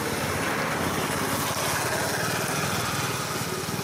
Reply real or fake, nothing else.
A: real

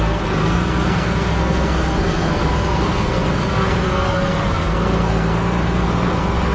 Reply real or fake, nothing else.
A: fake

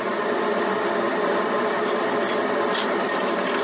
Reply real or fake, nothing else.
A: real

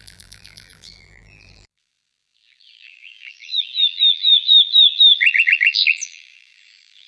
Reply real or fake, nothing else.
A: fake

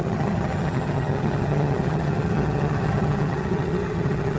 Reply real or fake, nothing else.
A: fake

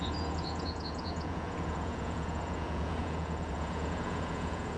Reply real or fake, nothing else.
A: fake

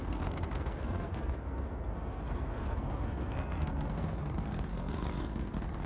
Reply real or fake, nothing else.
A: fake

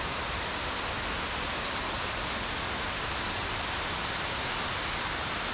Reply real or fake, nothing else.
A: real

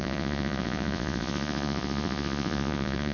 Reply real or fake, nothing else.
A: fake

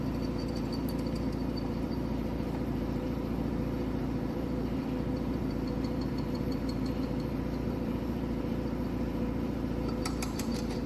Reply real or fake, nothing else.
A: fake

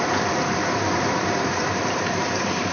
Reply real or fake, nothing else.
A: fake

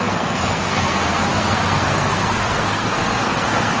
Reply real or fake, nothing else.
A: fake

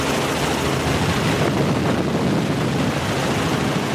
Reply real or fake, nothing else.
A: real